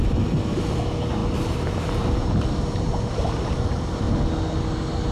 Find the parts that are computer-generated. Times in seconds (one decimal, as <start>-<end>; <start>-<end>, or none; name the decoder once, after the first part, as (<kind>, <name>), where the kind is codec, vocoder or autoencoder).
1.2-4.0 (vocoder, BigVGAN v2)